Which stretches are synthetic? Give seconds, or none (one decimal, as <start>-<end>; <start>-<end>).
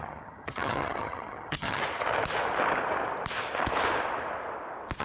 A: 0.0-1.8